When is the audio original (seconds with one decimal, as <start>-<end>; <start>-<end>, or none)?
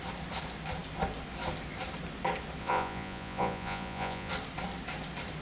0.0-2.6; 4.3-5.4